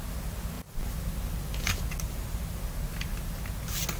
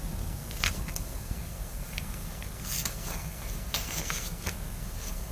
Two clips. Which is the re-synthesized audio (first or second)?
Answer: second